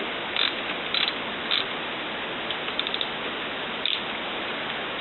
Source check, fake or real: real